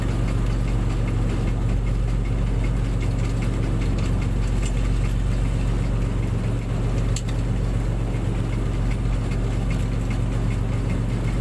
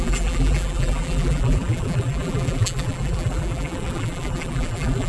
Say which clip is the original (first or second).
first